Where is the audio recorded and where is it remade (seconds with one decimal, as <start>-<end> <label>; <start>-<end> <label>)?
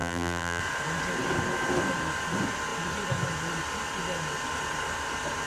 0.0-0.6 remade; 0.6-5.5 recorded